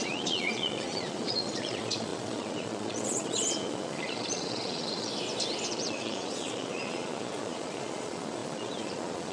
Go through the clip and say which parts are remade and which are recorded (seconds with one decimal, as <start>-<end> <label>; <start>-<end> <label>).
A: 0.0-5.1 remade; 5.1-5.7 recorded; 5.7-9.3 remade